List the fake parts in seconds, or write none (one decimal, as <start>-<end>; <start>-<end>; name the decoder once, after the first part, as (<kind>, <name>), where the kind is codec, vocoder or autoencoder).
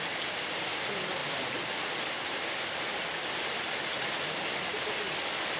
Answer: none